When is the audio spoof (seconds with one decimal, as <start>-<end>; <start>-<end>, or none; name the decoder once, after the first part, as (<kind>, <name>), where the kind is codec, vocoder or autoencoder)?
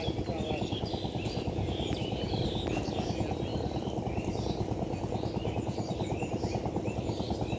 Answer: none